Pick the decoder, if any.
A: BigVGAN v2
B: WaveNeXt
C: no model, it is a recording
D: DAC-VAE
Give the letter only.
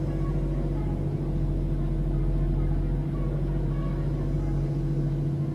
C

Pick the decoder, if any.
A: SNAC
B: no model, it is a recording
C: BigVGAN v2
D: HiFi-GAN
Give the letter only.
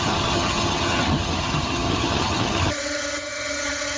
D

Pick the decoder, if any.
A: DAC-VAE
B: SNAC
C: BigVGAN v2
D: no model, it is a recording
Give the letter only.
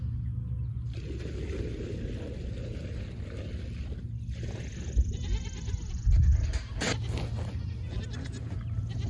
D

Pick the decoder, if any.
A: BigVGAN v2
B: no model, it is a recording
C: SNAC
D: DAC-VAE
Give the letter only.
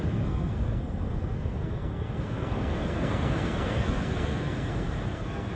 C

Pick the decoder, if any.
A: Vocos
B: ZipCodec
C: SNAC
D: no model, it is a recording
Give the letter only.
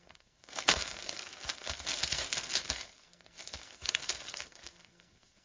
C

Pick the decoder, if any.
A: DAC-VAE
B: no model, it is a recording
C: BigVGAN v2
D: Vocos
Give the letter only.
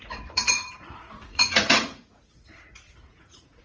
D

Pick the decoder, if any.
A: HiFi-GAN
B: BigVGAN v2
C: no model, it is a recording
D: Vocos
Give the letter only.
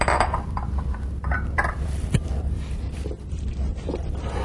B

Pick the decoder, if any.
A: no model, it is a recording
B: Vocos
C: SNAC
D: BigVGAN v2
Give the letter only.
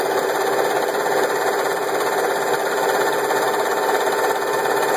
A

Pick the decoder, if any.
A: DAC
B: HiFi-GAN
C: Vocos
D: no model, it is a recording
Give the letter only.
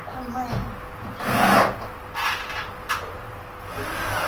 D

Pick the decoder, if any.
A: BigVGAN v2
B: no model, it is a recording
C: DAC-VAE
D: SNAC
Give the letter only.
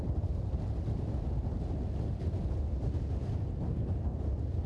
B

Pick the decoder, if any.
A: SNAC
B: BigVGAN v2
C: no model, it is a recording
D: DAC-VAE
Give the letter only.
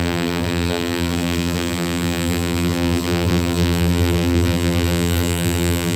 B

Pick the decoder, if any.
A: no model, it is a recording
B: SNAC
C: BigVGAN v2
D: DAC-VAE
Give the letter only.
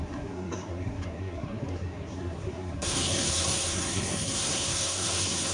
B